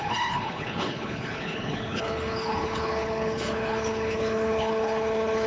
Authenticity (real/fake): fake